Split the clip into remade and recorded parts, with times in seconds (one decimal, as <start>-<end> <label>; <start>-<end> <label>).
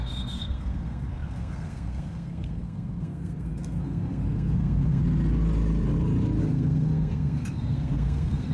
0.0-5.0 remade; 5.0-6.4 recorded; 6.4-8.5 remade